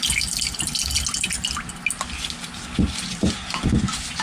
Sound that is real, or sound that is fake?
real